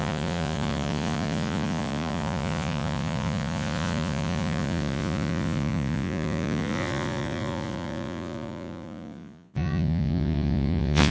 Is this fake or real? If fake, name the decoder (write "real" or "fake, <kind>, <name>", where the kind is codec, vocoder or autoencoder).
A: fake, vocoder, Vocos